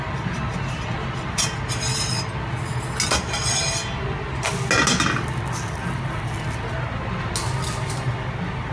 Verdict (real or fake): real